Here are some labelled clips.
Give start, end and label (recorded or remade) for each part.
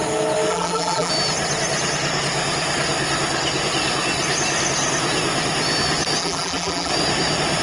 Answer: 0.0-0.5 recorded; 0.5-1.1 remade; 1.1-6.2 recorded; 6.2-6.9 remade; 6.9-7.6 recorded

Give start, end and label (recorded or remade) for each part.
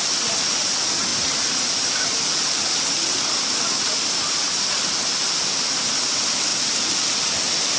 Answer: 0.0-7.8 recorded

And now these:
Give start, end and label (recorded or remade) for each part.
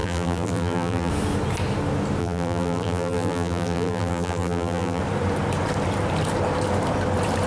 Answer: 0.0-1.1 remade; 1.1-2.2 recorded; 2.2-5.0 remade; 5.0-7.5 recorded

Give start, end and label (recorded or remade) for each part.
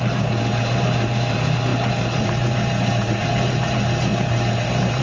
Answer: 0.0-5.0 remade